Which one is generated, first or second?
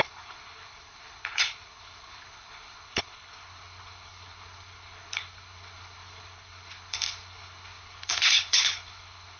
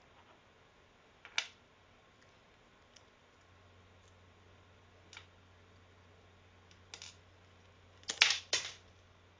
first